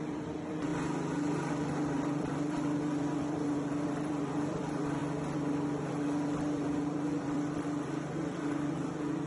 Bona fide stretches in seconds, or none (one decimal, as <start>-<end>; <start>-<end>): 0.7-1.5; 5.0-5.9